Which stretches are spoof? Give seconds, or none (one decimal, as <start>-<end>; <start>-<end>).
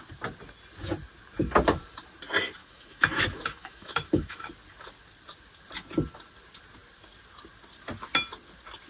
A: 2.6-4.5